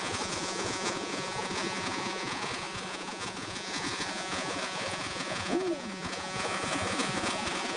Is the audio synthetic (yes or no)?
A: yes